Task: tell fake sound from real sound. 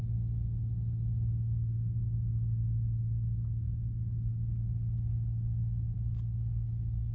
real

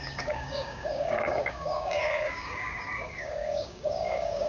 fake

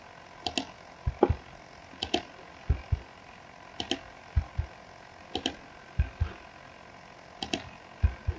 real